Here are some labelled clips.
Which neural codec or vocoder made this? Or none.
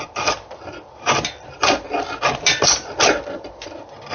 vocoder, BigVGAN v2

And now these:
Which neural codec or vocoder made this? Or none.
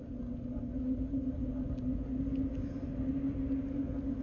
none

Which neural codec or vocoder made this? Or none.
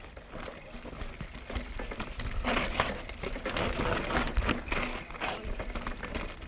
none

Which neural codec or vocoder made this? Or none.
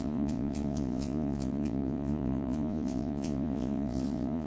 vocoder, Vocos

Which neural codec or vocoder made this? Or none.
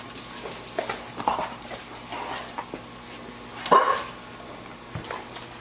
none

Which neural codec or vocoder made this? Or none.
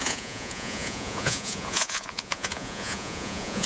vocoder, Vocos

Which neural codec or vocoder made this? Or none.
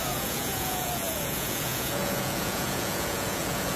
vocoder, Vocos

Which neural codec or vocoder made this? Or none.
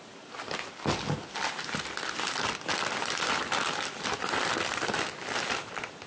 none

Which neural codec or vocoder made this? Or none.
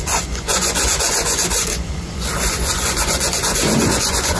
vocoder, Vocos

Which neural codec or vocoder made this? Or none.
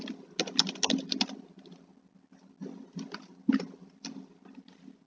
none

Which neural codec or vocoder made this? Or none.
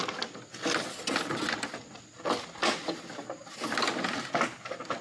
none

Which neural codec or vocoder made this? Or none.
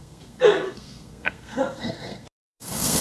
codec, SNAC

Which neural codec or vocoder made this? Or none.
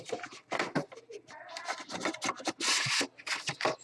none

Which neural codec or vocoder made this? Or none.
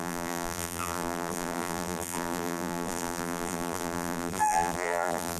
vocoder, BigVGAN v2